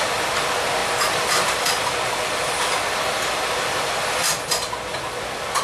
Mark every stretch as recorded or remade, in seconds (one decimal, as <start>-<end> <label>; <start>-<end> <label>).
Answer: 0.0-5.6 recorded